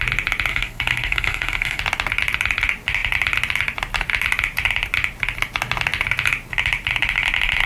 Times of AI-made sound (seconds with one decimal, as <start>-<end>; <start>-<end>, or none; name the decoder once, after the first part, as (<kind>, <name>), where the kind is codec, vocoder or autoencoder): 0.5-1.8 (codec, SNAC)